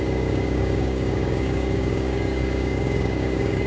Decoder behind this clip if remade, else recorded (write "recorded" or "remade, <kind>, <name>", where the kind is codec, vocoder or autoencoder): remade, codec, DAC